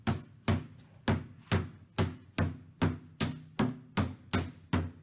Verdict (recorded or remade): recorded